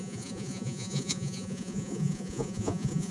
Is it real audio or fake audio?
fake